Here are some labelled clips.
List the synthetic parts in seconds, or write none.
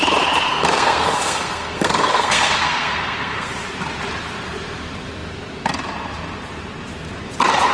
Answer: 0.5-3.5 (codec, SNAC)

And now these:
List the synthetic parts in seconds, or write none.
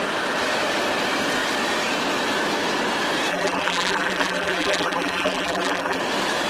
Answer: 3.3-6.0 (vocoder, BigVGAN v2)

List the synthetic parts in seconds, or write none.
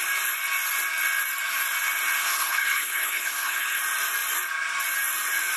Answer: 2.2-3.8 (codec, HILCodec)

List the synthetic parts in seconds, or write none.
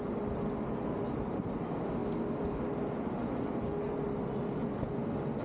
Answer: none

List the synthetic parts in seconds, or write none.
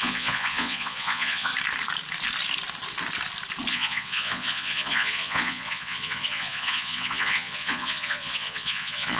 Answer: 0.0-1.5 (vocoder, Vocos); 3.7-9.2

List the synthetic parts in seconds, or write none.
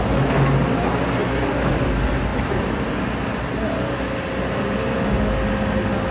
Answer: none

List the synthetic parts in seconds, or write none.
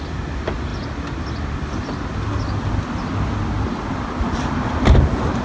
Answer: none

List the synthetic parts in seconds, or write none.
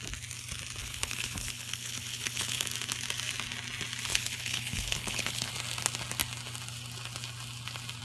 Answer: 0.8-2.6 (codec, HILCodec); 4.1-5.5